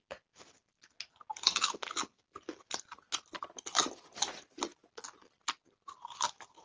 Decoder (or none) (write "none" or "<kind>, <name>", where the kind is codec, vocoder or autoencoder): none